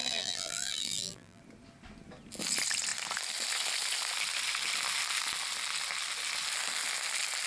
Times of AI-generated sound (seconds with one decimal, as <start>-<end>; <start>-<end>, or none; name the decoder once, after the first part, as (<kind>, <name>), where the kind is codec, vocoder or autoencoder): 0.0-1.4 (vocoder, BigVGAN v2)